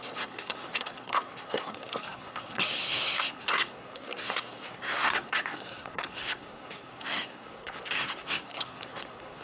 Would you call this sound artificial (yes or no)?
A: yes